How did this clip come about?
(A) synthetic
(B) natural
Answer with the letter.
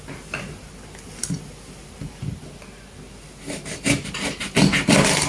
B